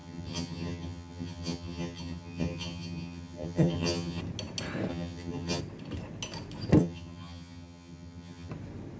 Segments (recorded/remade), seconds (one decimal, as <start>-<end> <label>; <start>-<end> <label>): 0.0-4.2 remade; 4.2-4.9 recorded; 4.9-5.6 remade; 5.6-6.8 recorded; 6.8-8.5 remade; 8.5-9.0 recorded